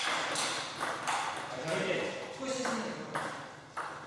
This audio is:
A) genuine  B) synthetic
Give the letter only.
A